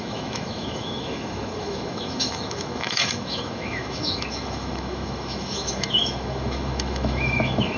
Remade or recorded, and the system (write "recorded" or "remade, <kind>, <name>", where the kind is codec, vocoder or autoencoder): remade, autoencoder, DAC-VAE